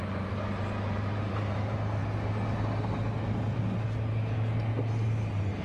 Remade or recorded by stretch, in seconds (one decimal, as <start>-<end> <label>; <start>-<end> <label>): 0.0-2.0 remade; 2.0-5.6 recorded